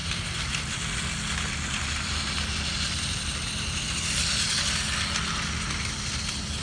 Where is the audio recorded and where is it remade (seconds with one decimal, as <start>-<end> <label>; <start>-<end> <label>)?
0.0-6.6 recorded